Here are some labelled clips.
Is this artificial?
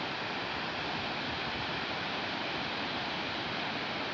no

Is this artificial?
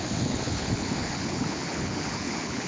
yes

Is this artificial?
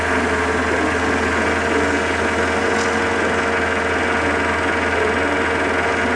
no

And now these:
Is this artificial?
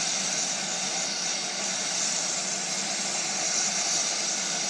no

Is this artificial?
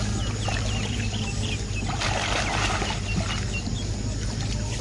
no